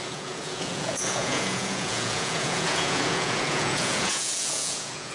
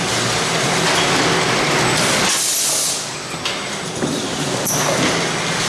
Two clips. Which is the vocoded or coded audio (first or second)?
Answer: first